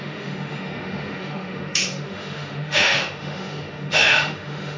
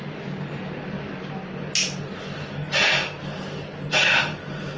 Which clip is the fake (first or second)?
first